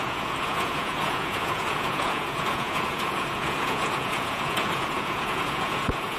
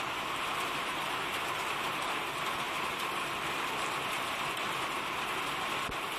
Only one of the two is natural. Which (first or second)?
second